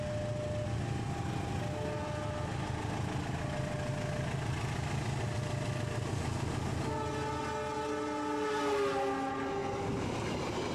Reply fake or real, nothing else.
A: real